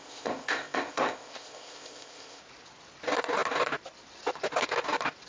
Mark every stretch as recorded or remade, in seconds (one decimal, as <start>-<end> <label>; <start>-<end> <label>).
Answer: 0.0-2.4 remade; 2.4-5.3 recorded